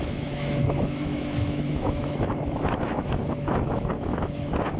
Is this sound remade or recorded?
remade